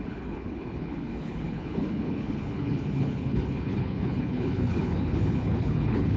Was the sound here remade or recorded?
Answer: remade